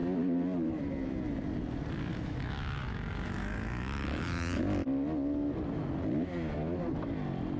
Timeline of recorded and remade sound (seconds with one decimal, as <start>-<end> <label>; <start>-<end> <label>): 0.0-2.1 recorded; 2.1-4.6 remade; 4.6-7.6 recorded